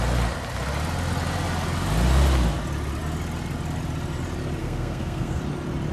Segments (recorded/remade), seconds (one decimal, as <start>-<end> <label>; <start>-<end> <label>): 0.0-4.6 recorded; 4.6-5.4 remade; 5.4-5.9 recorded